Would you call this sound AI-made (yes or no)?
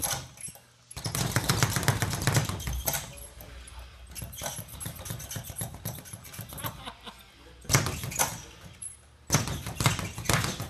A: no